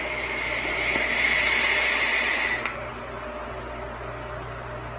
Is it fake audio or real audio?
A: real